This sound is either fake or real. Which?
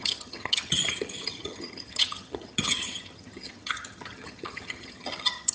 fake